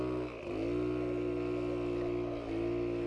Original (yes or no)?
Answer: yes